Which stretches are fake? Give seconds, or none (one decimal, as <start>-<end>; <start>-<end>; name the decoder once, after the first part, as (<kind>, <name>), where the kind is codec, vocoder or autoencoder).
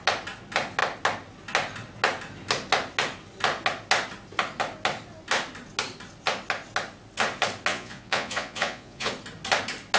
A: 7.7-9.1 (vocoder, Vocos)